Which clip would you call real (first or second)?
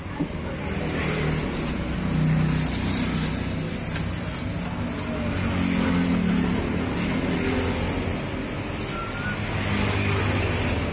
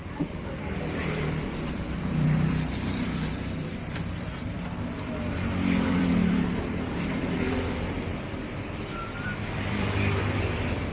first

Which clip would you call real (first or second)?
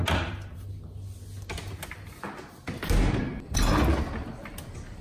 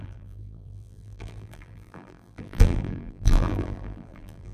first